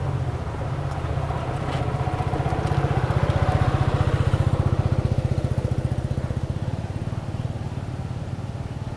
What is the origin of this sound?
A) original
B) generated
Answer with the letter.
A